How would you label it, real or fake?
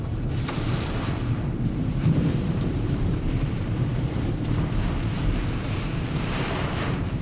fake